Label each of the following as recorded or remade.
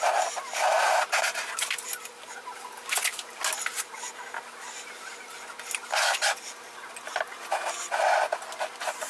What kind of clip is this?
recorded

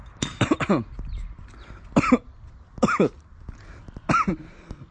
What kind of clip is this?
recorded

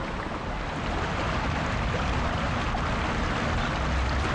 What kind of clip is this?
recorded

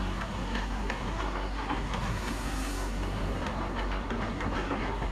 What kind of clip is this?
remade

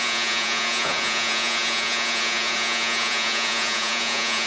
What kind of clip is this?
remade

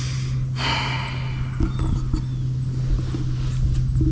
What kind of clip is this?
recorded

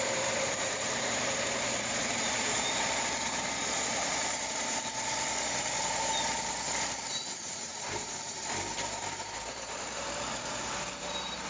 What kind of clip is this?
remade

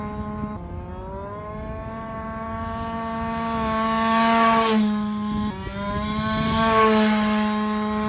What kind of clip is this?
recorded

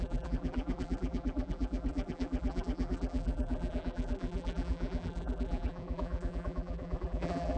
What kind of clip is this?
remade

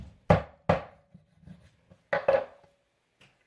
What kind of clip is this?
recorded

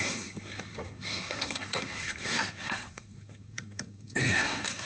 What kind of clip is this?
remade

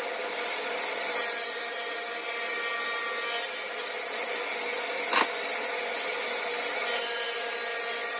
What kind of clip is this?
recorded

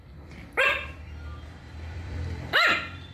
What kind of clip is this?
remade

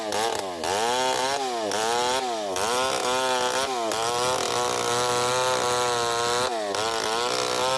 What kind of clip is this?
recorded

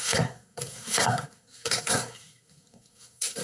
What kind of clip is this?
remade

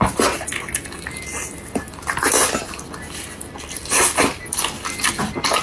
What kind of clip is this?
recorded